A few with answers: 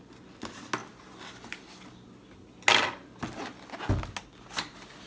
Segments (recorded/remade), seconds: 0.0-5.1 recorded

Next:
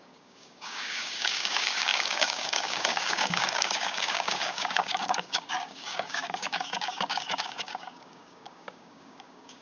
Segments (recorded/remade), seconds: 0.0-9.6 remade

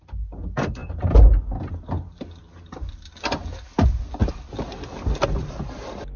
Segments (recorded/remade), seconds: 0.0-6.2 recorded

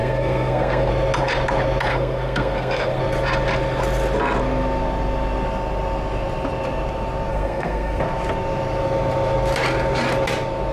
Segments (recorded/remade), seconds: 0.0-0.9 remade; 0.9-1.9 recorded; 1.9-3.0 remade; 3.0-7.3 recorded; 7.3-8.0 remade; 8.0-10.7 recorded

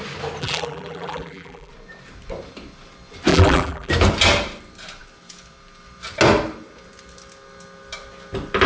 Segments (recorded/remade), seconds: 0.0-0.4 recorded; 0.4-1.7 remade; 1.7-3.3 recorded; 3.3-3.9 remade; 3.9-8.7 recorded

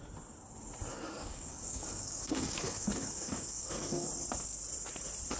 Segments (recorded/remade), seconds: 0.0-0.9 recorded; 0.9-4.1 remade; 4.1-5.4 recorded

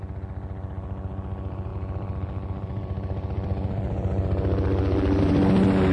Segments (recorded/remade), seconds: 0.0-1.7 recorded; 1.7-5.2 remade; 5.2-5.9 recorded